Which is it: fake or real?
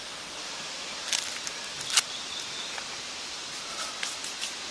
real